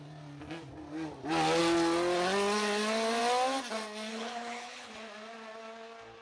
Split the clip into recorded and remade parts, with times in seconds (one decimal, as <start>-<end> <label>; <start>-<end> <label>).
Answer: 0.0-4.1 recorded; 4.1-4.9 remade; 4.9-6.2 recorded